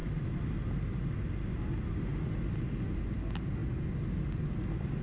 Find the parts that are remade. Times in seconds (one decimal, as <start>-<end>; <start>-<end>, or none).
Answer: none